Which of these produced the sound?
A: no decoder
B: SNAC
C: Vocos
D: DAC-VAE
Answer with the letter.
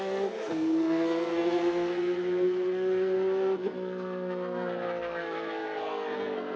B